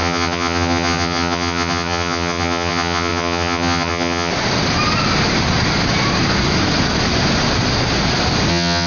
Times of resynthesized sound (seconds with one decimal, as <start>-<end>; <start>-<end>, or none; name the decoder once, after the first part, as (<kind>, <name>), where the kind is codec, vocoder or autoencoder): 0.0-4.3 (vocoder, HiFi-GAN); 8.5-8.9